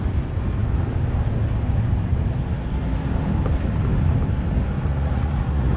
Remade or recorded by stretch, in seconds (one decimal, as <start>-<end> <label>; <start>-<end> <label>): 0.0-4.9 recorded; 4.9-5.8 remade